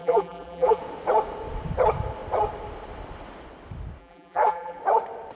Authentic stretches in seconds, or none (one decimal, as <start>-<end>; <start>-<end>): 0.8-4.0; 4.8-5.3